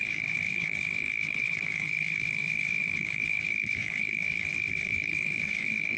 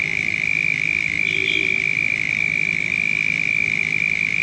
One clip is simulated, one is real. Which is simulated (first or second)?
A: first